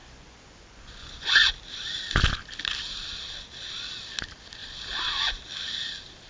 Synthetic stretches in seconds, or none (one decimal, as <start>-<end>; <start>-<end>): 0.0-1.5